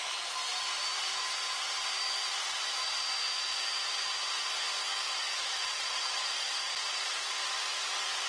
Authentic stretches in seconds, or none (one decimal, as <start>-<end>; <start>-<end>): 0.0-5.4; 7.2-8.3